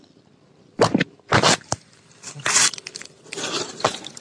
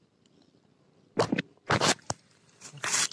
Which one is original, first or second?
second